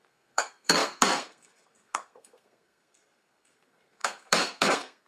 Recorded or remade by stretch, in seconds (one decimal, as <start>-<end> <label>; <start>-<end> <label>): 0.0-5.1 remade